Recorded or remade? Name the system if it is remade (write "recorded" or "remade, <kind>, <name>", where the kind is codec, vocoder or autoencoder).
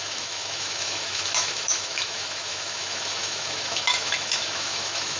remade, autoencoder, DAC-VAE